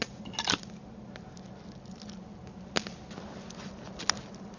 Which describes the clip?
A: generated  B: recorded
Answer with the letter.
B